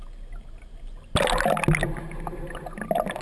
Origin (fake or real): real